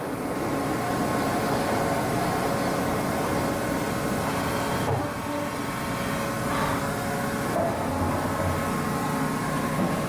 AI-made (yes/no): no